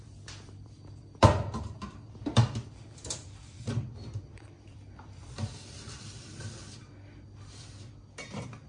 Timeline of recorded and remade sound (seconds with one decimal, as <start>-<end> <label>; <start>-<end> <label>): 0.0-6.6 remade; 6.6-8.2 recorded; 8.2-8.7 remade